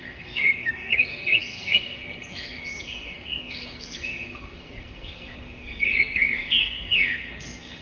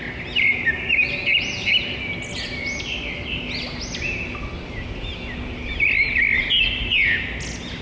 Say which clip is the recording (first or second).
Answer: second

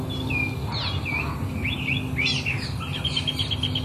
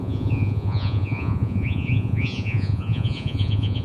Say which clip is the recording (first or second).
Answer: first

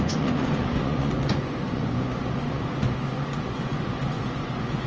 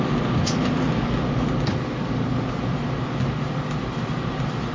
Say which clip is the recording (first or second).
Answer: second